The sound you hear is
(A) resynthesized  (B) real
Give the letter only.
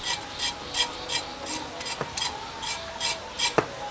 B